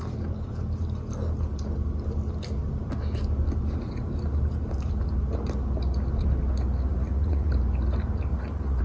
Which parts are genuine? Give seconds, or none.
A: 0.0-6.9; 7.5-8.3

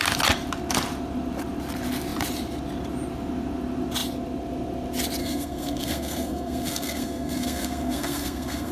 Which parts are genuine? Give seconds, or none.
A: 0.0-5.2

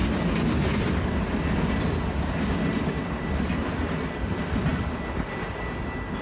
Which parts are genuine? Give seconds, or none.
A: 0.0-6.2

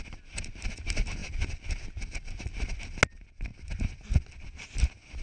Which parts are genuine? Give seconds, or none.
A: 0.0-5.2

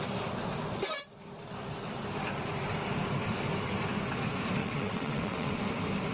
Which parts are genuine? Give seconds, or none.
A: 0.0-4.6; 5.5-6.1